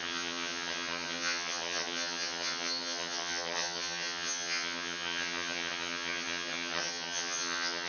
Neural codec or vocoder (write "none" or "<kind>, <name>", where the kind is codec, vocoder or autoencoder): vocoder, HiFi-GAN